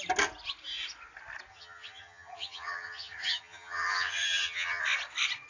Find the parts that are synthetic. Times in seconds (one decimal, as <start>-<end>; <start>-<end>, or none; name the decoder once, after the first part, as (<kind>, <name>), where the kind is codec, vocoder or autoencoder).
1.5-4.8 (vocoder, HiFi-GAN)